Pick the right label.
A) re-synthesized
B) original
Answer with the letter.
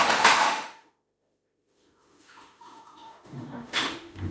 A